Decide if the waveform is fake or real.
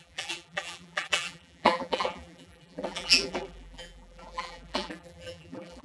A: fake